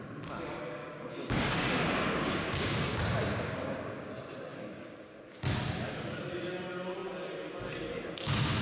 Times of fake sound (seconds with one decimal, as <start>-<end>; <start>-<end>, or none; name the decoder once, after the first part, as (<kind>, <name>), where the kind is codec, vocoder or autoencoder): 0.8-4.1 (codec, DAC); 4.5-5.2

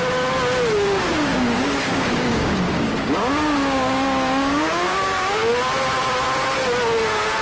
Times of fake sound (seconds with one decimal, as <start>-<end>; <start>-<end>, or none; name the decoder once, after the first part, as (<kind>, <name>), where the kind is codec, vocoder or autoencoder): 1.1-5.5 (codec, DAC)

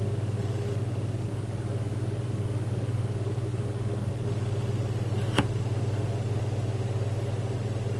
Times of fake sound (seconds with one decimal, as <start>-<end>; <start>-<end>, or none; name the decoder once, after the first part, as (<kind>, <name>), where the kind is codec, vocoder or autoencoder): 1.3-4.1 (codec, DAC)

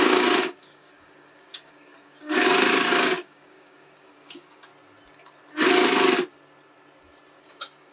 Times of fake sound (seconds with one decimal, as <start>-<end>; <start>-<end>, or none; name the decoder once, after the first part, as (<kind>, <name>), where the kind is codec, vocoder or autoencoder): 0.0-4.7 (codec, DAC); 7.4-7.9

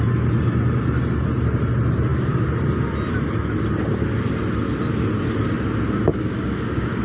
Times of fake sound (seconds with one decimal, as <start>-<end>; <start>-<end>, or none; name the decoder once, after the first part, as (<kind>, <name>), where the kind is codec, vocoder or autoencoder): 6.1-7.0 (codec, DAC)